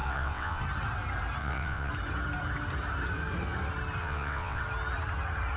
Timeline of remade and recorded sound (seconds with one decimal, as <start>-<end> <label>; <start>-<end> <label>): 0.0-0.6 remade; 0.6-1.4 recorded; 1.4-1.9 remade; 1.9-4.0 recorded; 4.0-4.6 remade; 4.6-5.6 recorded